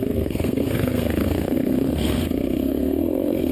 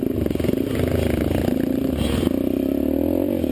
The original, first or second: second